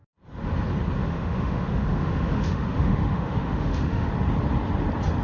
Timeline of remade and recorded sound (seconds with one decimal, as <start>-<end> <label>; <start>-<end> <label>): 0.0-1.0 recorded; 1.0-4.1 remade; 4.1-5.2 recorded